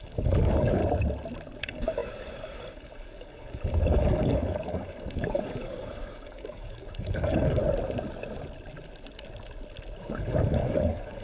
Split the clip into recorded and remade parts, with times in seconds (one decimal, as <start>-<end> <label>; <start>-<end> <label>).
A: 0.0-0.8 remade; 0.8-1.6 recorded; 1.6-7.6 remade; 7.6-10.0 recorded; 10.0-11.2 remade